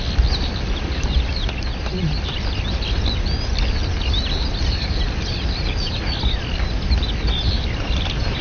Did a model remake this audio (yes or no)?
no